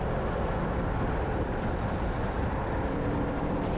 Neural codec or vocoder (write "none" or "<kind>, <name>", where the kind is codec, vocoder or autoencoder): vocoder, BigVGAN v2